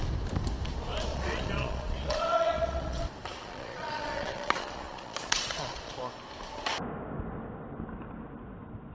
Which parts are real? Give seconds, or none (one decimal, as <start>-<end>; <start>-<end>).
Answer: 0.0-1.1; 3.0-3.4; 6.0-8.9